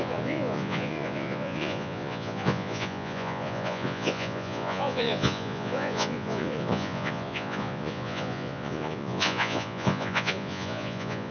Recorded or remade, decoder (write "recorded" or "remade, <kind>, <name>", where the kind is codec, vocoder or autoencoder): remade, vocoder, Vocos